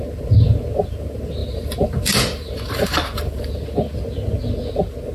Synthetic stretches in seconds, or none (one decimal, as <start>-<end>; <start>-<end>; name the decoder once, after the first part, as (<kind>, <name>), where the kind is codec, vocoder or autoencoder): 1.4-3.5 (vocoder, BigVGAN v2)